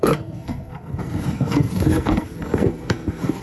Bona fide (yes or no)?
no